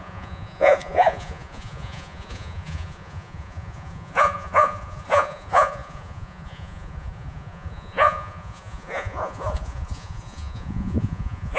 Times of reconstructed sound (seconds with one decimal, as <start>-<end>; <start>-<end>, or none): 0.0-11.6